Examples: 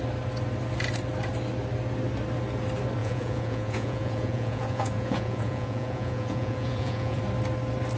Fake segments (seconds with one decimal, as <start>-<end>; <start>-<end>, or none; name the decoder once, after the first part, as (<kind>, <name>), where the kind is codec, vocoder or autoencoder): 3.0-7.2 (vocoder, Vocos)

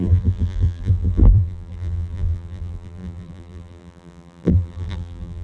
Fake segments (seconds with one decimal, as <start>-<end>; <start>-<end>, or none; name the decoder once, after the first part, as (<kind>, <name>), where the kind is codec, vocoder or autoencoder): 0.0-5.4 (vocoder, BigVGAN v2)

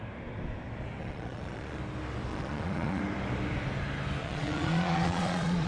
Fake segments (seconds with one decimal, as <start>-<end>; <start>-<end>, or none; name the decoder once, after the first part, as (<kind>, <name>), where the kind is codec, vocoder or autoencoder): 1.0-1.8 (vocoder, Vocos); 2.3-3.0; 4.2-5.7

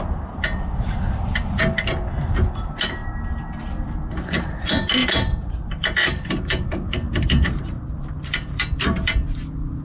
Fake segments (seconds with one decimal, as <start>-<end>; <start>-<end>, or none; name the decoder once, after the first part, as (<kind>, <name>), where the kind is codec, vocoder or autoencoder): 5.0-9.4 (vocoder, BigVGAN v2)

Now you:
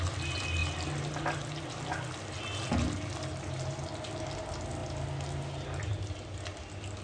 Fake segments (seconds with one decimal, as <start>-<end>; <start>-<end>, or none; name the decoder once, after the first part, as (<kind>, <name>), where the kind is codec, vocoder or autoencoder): none